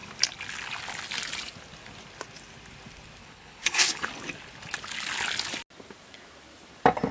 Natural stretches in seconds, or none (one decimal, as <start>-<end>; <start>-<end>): 0.0-3.2; 4.1-7.1